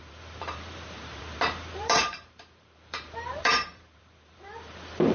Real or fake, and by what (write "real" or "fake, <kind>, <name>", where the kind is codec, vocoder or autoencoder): fake, vocoder, BigVGAN v2